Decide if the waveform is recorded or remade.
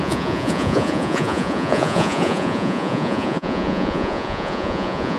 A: remade